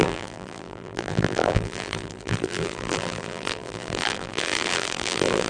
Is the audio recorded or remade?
remade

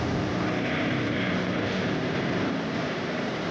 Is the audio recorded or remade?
remade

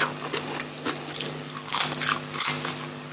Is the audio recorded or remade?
recorded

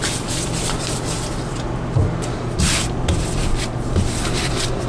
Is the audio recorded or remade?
remade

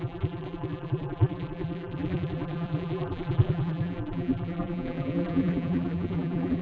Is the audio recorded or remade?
remade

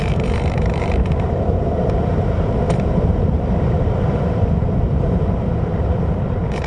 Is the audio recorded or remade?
remade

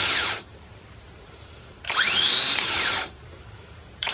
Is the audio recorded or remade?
remade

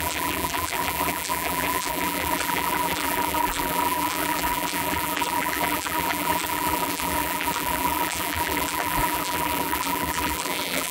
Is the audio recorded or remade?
remade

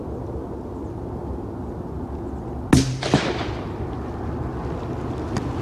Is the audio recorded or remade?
recorded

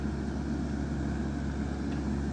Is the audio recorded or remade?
recorded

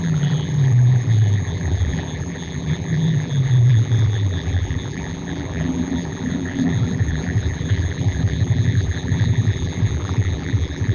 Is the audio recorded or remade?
remade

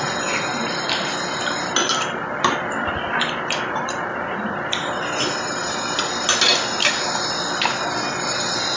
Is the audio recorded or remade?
recorded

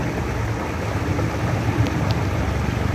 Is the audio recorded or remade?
recorded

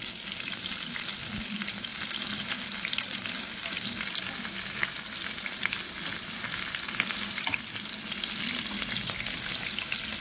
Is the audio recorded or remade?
recorded